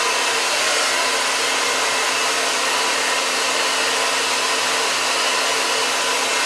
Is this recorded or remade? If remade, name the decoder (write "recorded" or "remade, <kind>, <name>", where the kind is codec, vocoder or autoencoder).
recorded